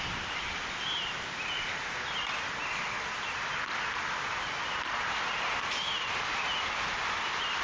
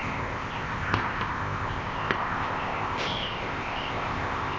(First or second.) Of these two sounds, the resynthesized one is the second